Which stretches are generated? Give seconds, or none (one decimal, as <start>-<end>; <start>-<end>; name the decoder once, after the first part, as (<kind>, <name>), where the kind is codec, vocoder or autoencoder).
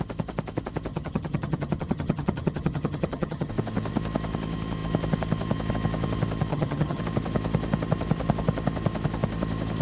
0.9-3.5 (vocoder, HiFi-GAN); 6.5-7.0